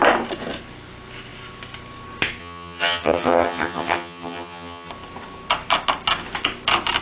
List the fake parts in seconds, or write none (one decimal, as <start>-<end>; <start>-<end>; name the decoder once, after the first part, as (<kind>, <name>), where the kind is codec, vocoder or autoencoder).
2.4-4.9 (vocoder, HiFi-GAN)